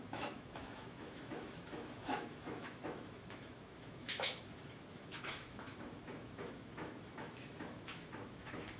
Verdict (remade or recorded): remade